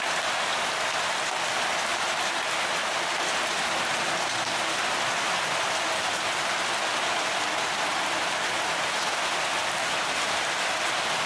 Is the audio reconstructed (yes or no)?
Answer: no